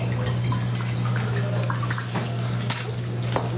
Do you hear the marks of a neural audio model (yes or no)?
no